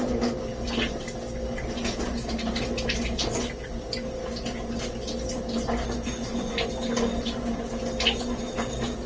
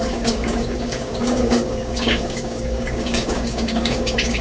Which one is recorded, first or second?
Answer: first